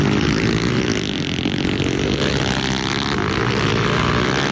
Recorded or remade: recorded